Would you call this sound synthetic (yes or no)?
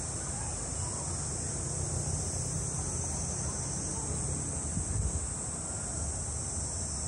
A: no